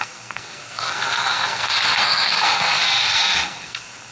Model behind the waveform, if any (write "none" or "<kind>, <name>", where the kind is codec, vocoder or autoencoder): codec, SNAC